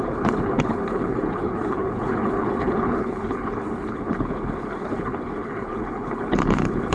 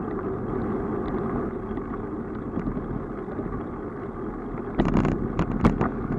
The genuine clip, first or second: second